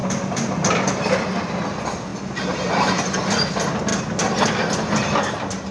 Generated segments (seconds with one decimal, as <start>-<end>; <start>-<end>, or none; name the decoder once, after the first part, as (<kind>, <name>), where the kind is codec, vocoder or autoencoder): none